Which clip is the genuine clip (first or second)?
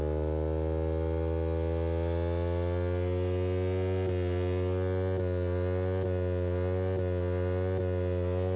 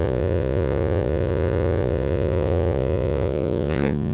first